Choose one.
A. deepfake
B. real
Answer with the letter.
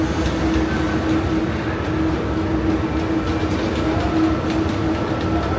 B